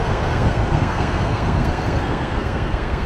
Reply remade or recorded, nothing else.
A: remade